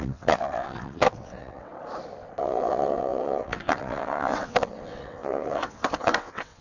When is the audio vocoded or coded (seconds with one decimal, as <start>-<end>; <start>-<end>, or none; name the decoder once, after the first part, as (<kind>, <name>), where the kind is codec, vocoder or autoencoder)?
0.0-1.7 (vocoder, WaveNeXt); 2.4-6.6